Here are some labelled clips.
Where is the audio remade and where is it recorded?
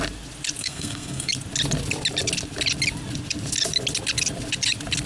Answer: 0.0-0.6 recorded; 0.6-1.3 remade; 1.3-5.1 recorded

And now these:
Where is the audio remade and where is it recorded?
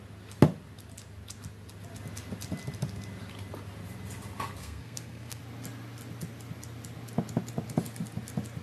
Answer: 0.0-4.6 recorded; 4.6-5.4 remade; 5.4-8.6 recorded